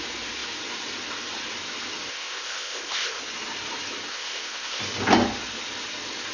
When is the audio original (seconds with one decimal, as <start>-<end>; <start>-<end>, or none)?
0.0-2.1; 3.2-4.1; 4.8-6.3